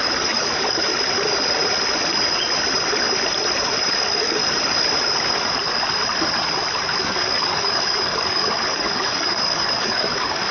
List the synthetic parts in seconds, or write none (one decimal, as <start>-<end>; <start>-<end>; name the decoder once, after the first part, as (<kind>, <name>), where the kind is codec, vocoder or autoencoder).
0.0-0.9 (codec, DAC); 3.9-4.4; 7.0-10.5